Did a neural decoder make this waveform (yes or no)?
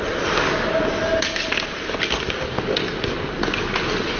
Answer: no